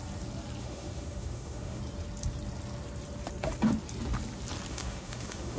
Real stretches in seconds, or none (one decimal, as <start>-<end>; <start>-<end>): 0.0-0.6; 1.8-4.7